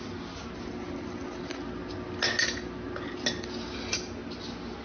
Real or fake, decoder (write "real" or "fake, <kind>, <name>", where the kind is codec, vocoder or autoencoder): real